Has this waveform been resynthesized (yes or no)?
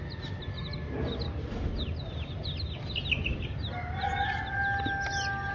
no